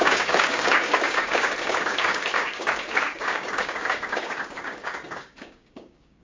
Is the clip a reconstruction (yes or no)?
yes